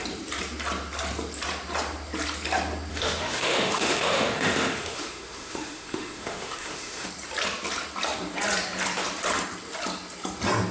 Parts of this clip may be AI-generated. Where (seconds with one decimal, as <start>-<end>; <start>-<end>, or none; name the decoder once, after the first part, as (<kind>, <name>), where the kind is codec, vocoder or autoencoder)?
2.9-7.1 (autoencoder, DAC-VAE)

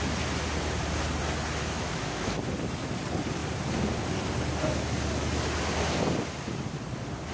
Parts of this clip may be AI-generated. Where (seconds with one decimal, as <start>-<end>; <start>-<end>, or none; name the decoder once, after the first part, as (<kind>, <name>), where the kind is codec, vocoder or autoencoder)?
1.6-2.3 (autoencoder, DAC-VAE)

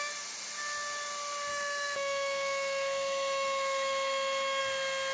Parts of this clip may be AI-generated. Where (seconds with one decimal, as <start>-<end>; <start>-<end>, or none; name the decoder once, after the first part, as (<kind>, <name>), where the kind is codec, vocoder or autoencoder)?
1.5-4.6 (autoencoder, DAC-VAE)

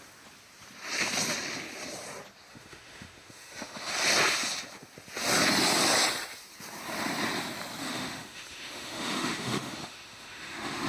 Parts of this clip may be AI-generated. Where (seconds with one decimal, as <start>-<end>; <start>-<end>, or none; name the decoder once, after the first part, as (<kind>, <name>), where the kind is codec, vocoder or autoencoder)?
2.5-3.9 (autoencoder, DAC-VAE); 7.8-10.9

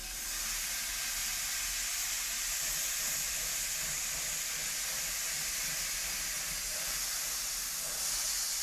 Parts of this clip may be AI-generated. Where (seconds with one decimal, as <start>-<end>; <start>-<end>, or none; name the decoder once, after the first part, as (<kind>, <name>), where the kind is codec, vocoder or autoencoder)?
none

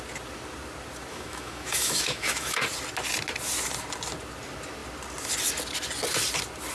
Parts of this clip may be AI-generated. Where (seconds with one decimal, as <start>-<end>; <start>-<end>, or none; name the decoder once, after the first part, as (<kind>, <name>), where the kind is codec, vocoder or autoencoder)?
1.1-2.6 (autoencoder, DAC-VAE)

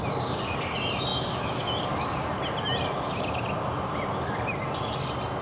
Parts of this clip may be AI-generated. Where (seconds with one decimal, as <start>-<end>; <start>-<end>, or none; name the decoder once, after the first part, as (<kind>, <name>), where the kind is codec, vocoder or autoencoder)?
1.1-1.8 (autoencoder, DAC-VAE)

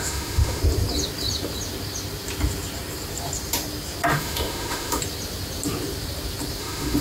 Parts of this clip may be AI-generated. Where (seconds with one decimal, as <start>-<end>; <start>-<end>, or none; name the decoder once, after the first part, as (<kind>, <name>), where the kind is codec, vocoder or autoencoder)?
0.0-0.6 (autoencoder, DAC-VAE); 4.1-5.0; 6.6-7.0